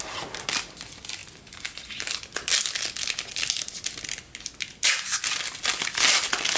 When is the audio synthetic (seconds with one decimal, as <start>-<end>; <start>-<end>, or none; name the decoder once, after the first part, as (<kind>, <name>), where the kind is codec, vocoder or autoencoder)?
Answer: none